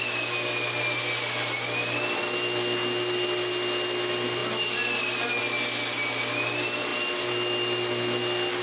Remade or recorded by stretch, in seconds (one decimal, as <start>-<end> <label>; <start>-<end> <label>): 0.0-8.6 recorded

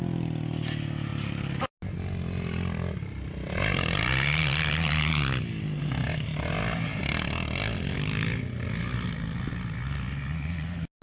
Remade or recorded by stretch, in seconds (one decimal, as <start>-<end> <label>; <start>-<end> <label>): 0.0-11.0 recorded